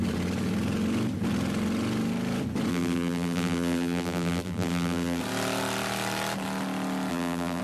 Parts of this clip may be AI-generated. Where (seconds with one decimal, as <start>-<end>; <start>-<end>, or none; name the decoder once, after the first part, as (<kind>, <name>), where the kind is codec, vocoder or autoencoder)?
2.7-5.2 (vocoder, BigVGAN v2); 7.1-7.6